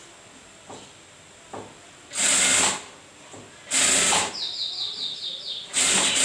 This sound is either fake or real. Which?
real